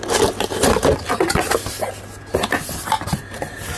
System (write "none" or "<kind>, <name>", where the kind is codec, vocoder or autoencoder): none